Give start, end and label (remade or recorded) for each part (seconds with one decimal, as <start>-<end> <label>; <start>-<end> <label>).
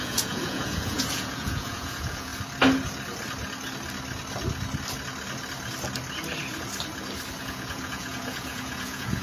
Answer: 0.0-2.3 remade; 2.3-7.4 recorded; 7.4-9.2 remade